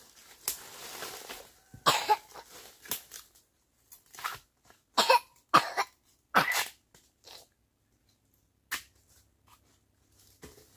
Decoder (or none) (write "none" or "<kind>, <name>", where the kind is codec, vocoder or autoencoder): none